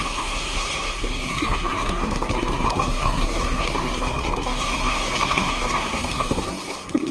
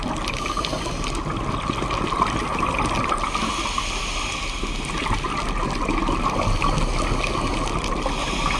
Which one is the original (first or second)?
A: second